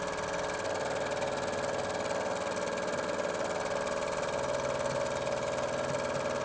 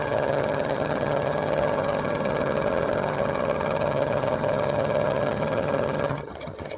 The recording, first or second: first